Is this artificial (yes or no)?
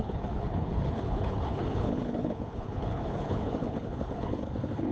yes